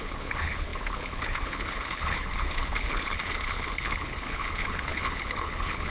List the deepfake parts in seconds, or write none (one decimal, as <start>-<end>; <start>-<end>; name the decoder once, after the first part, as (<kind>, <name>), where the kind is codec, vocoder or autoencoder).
0.0-5.9 (codec, HILCodec)

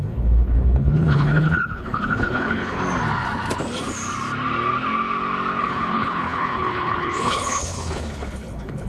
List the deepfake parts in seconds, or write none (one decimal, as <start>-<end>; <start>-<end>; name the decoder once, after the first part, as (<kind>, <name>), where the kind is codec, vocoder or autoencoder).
0.0-2.8 (codec, HILCodec); 5.6-8.9

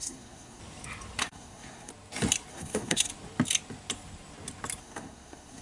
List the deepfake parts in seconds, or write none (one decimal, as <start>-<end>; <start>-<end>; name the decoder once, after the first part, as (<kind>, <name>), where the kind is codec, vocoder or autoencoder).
0.0-0.6 (codec, SNAC); 1.2-1.9; 2.5-3.1; 4.8-5.6

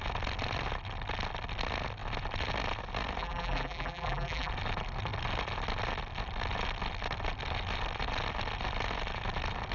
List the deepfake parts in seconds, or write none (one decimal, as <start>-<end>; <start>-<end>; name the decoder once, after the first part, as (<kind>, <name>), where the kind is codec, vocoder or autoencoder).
3.2-4.5 (vocoder, BigVGAN v2)

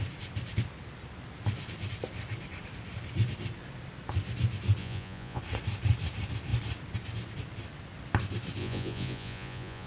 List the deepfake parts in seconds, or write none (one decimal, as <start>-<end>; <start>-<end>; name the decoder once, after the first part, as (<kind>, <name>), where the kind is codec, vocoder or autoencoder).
4.8-5.4 (vocoder, Vocos); 8.6-9.9

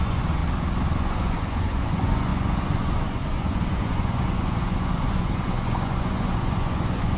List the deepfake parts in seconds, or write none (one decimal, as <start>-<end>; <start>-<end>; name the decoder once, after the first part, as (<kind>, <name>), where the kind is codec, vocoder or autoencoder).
0.0-0.4 (vocoder, Vocos); 1.0-7.2

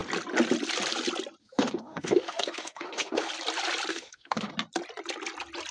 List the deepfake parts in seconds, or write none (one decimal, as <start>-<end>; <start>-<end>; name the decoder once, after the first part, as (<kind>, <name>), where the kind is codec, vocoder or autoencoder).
1.4-3.3 (autoencoder, DAC-VAE); 3.9-4.5